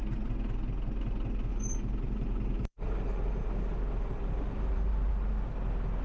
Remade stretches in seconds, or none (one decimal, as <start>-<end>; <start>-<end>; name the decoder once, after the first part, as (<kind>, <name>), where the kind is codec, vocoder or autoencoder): 1.5-5.1 (vocoder, BigVGAN v2)